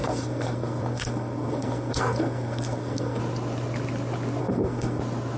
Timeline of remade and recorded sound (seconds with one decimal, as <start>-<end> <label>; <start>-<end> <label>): 0.0-3.2 remade; 3.2-4.4 recorded; 4.4-5.0 remade; 5.0-5.4 recorded